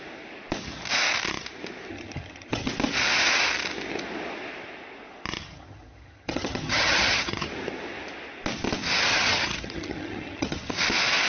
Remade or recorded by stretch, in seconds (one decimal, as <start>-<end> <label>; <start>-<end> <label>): 0.0-1.9 recorded; 1.9-2.7 remade; 2.7-5.4 recorded; 5.4-7.5 remade; 7.5-9.1 recorded; 9.1-10.7 remade; 10.7-11.3 recorded